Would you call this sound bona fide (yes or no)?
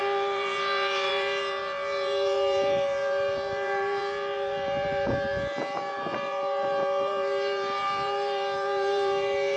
no